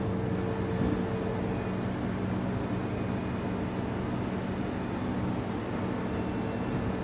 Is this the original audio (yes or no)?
yes